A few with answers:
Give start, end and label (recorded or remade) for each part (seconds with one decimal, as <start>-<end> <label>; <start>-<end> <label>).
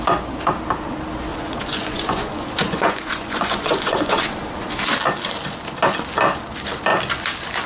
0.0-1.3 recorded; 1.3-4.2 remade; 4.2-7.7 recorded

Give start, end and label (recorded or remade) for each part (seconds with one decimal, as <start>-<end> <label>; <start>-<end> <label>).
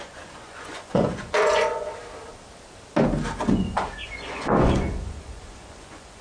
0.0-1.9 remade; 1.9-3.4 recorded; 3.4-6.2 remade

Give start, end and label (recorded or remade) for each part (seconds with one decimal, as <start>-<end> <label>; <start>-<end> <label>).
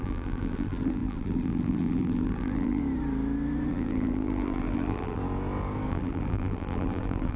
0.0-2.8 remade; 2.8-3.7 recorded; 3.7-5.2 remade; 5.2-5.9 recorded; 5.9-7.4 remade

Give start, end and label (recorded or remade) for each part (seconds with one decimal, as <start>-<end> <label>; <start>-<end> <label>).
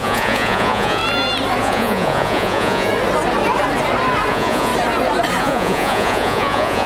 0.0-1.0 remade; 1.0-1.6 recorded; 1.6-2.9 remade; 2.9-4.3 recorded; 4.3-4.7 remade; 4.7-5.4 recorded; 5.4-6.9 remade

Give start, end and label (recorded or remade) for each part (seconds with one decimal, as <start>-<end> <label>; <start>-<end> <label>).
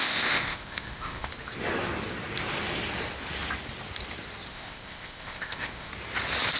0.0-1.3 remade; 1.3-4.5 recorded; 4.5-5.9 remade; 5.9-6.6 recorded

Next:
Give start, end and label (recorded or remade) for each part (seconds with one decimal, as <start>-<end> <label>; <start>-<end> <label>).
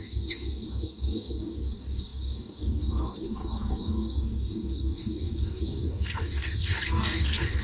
0.0-7.6 remade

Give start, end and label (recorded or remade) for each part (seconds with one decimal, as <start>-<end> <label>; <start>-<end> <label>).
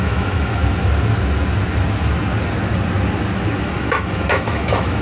0.0-0.6 remade; 0.6-3.6 recorded; 3.6-5.0 remade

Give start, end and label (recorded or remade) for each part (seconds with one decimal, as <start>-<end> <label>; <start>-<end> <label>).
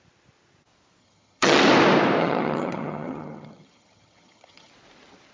0.0-1.0 recorded; 1.0-1.6 remade; 1.6-2.2 recorded; 2.2-4.7 remade; 4.7-5.3 recorded